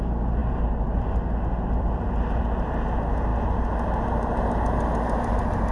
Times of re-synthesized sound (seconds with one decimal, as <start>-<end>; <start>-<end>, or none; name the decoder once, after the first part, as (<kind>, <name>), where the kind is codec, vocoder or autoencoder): none